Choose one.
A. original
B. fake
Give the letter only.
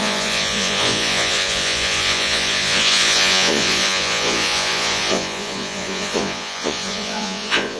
B